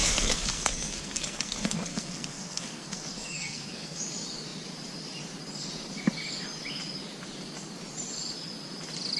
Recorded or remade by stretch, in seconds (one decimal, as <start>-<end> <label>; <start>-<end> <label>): 0.0-4.0 remade; 4.0-9.2 recorded